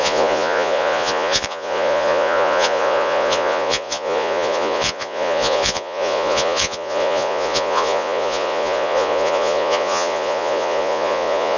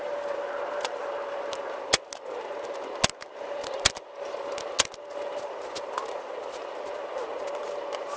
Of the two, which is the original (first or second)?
second